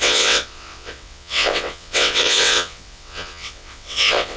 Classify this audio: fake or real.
fake